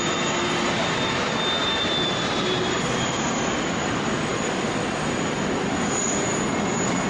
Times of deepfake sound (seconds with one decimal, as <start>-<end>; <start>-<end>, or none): none